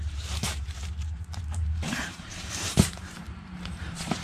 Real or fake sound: fake